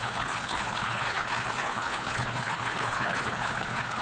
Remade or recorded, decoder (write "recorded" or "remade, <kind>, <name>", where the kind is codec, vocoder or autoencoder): remade, codec, HILCodec